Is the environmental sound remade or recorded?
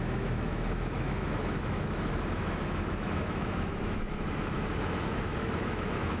remade